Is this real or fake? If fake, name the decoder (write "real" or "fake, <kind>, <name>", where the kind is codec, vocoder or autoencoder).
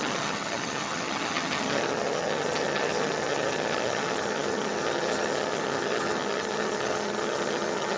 fake, vocoder, HiFi-GAN